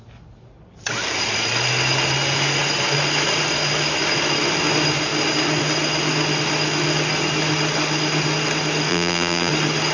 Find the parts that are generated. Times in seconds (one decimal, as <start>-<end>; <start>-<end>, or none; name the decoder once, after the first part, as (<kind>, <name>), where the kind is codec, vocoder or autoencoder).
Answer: 8.9-9.5 (vocoder, BigVGAN v2)